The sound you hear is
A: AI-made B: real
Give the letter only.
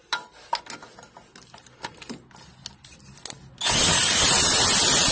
B